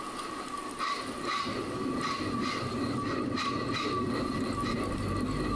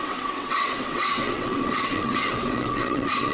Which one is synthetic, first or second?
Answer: second